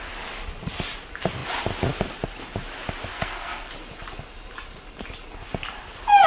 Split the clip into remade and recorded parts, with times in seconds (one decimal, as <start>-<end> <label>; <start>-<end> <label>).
0.0-3.1 recorded; 3.1-3.7 remade; 3.7-6.3 recorded